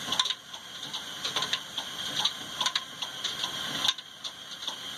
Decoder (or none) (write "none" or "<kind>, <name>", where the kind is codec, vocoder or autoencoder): none